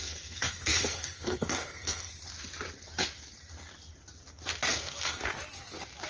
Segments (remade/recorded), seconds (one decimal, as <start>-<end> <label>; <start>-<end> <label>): 0.0-2.1 remade; 2.1-4.7 recorded; 4.7-5.2 remade; 5.2-6.1 recorded